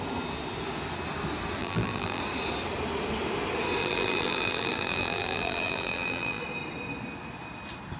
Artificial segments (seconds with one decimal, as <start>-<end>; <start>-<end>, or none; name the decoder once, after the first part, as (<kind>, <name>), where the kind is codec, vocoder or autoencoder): 1.6-2.2 (vocoder, BigVGAN v2); 3.8-6.4